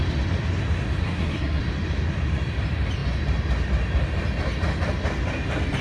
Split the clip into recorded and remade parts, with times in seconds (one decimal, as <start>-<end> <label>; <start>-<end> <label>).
0.0-1.0 recorded; 1.0-1.6 remade; 1.6-5.8 recorded

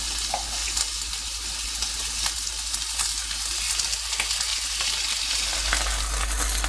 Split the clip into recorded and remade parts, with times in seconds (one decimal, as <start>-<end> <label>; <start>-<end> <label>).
0.0-6.7 recorded

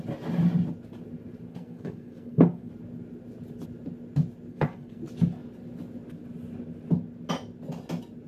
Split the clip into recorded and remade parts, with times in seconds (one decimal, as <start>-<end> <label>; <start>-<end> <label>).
0.0-1.5 recorded; 1.5-2.7 remade; 2.7-4.5 recorded; 4.5-5.0 remade; 5.0-8.3 recorded

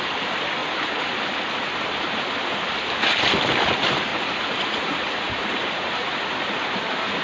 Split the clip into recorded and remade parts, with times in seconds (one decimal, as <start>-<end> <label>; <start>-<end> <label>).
0.0-4.1 recorded; 4.1-6.2 remade; 6.2-7.2 recorded